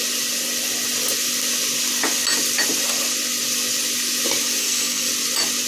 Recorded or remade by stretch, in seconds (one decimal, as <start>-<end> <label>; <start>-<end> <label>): 0.0-4.6 recorded; 4.6-5.1 remade; 5.1-5.7 recorded